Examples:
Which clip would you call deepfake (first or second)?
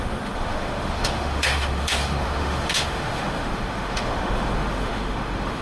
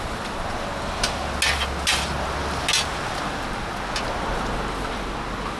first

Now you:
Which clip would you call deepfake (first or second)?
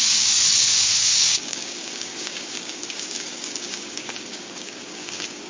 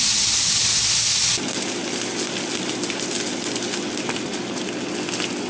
first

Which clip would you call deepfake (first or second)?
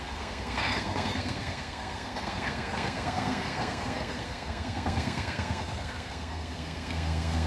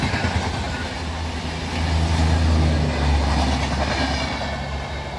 first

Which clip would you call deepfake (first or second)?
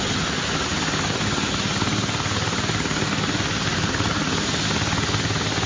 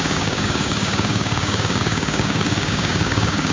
second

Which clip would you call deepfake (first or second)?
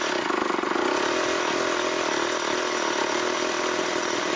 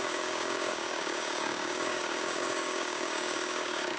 second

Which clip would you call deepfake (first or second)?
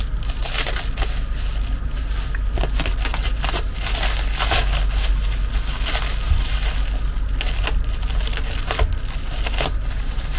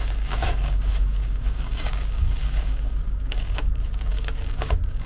second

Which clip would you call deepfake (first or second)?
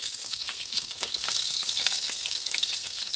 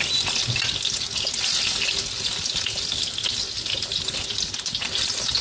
first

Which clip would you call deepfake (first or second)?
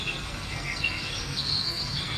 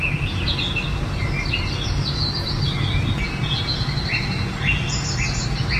first